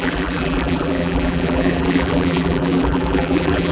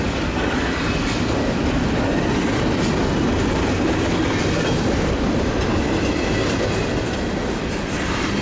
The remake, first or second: first